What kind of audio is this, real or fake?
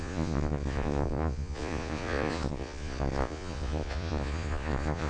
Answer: fake